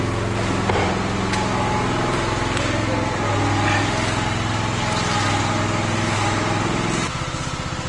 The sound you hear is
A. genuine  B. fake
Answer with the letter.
A